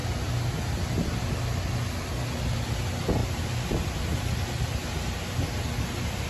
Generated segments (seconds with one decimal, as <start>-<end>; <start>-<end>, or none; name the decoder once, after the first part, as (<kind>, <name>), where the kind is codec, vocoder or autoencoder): none

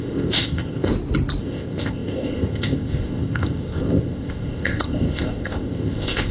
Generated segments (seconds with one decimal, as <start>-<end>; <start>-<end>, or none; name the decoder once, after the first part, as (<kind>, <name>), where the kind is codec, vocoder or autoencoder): 0.0-0.9 (codec, ZipCodec); 1.4-6.3

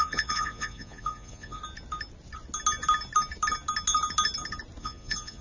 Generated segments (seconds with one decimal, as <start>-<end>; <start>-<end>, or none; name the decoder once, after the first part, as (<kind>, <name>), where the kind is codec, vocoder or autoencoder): 0.0-1.6 (vocoder, Vocos); 4.8-5.4

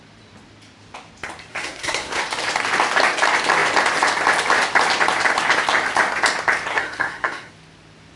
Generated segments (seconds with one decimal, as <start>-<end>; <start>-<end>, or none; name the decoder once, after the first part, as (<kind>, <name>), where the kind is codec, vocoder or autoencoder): 1.5-2.2 (codec, SNAC); 6.7-7.5

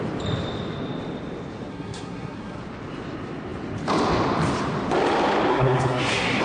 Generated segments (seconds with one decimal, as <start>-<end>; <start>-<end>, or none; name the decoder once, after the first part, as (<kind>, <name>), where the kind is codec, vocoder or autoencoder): 1.7-2.6 (codec, SNAC); 5.5-6.4

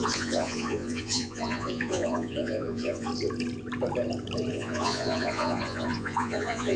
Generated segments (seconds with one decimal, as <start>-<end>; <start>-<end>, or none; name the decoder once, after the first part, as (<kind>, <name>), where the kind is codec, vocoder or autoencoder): 0.0-3.1 (vocoder, Vocos); 4.5-6.8

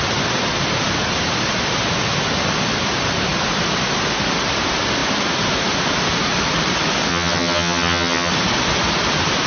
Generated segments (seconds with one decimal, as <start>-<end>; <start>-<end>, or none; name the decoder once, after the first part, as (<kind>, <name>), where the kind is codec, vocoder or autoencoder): 7.1-8.3 (vocoder, HiFi-GAN)